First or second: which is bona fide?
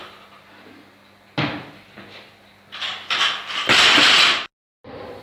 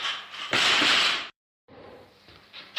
first